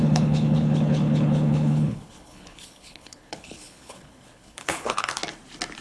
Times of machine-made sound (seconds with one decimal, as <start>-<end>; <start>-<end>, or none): 0.0-5.2